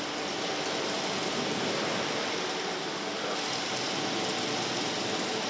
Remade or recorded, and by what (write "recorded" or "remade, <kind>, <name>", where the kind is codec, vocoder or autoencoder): recorded